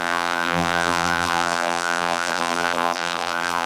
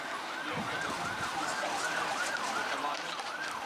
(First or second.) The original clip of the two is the second